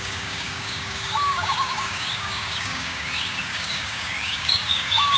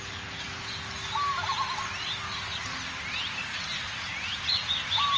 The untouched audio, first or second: second